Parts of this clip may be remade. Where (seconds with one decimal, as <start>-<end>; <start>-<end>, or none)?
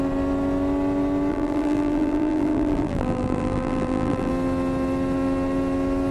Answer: 1.3-4.3